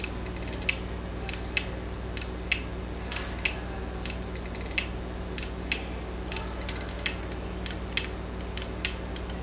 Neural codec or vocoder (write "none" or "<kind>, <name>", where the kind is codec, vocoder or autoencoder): none